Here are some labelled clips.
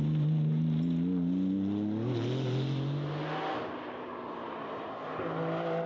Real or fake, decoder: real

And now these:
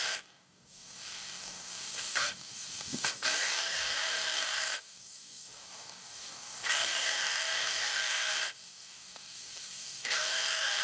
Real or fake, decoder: fake, codec, DAC